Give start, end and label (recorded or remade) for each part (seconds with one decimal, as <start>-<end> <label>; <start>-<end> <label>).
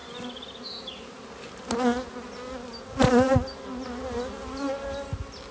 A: 0.0-5.5 recorded